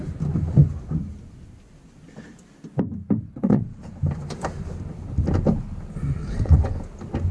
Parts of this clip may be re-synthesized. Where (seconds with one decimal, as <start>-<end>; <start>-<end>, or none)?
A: 3.2-3.8; 6.2-6.7